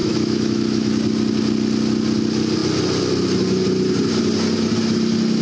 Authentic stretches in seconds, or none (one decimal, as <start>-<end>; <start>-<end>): 0.9-5.4